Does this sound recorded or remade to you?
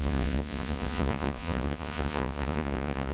remade